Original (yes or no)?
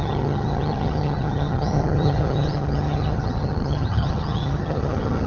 no